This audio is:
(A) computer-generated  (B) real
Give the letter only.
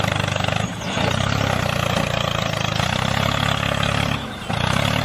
B